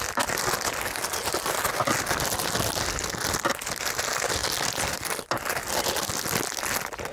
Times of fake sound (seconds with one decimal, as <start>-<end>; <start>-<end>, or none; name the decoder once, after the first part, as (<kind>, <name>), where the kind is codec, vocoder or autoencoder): none